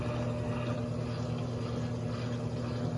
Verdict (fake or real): real